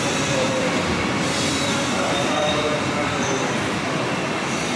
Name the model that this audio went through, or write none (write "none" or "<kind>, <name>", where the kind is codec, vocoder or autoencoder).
vocoder, BigVGAN v2